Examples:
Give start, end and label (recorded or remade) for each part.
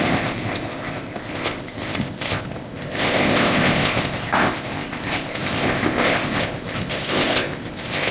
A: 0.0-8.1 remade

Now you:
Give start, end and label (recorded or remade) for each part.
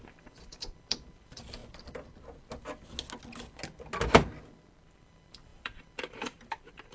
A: 0.0-1.6 remade; 1.6-4.9 recorded; 4.9-6.9 remade